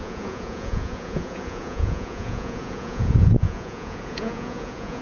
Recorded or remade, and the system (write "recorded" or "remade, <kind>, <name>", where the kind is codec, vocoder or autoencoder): remade, vocoder, Vocos